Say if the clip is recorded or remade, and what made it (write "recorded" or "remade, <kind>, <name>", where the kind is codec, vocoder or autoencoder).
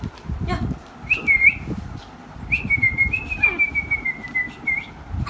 recorded